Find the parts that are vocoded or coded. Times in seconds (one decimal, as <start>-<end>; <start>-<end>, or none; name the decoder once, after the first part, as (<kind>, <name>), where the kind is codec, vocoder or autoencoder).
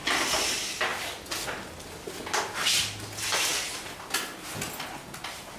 none